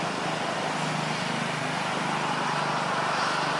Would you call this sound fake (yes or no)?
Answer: no